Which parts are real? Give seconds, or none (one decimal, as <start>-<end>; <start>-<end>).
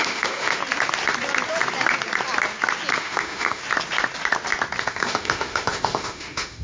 0.6-2.9; 3.6-4.8